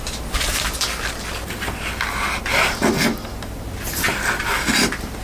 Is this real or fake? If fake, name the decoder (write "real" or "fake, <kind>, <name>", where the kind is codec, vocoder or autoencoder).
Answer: real